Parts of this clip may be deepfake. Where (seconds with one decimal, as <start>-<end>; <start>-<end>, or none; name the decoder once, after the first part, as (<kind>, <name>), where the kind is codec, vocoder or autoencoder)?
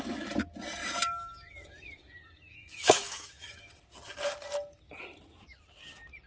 0.8-3.7 (autoencoder, DAC-VAE)